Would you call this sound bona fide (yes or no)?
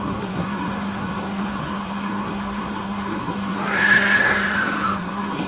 no